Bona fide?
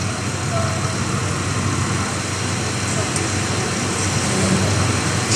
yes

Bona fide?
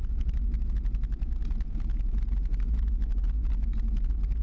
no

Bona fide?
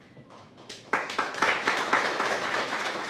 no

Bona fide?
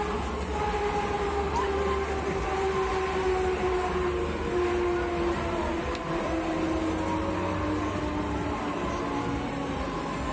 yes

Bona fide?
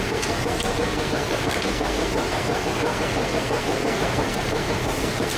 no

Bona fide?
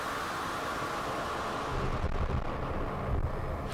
yes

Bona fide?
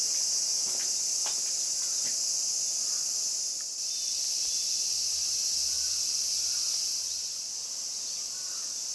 yes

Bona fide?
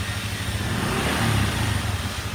yes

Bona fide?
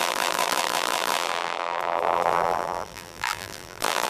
no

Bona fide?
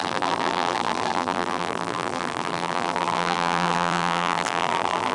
no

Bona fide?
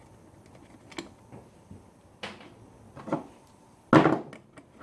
yes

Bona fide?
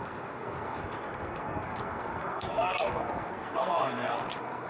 no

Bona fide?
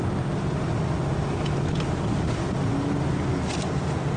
yes